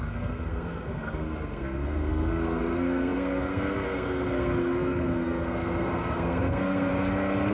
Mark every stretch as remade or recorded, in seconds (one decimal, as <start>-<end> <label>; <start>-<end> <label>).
0.0-6.9 remade; 6.9-7.5 recorded